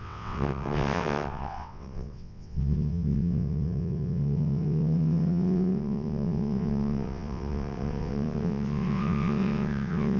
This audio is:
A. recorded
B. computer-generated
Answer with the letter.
B